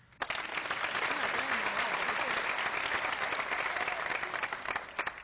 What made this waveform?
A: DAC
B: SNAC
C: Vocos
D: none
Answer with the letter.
D